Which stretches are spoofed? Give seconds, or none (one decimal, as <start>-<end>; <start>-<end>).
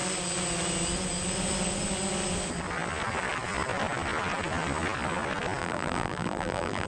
5.6-6.9